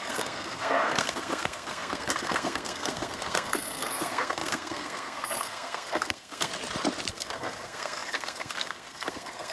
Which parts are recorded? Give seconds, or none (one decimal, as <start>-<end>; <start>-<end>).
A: 6.5-7.1

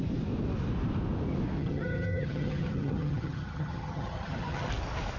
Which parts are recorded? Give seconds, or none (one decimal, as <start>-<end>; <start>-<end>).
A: 0.0-1.6; 4.7-5.2

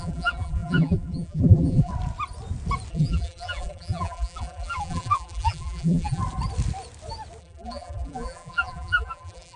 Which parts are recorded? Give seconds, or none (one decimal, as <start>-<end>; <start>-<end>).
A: 1.9-2.9; 6.2-7.4